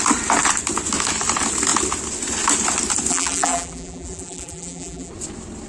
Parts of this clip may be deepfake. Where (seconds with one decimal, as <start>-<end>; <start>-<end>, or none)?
3.1-5.1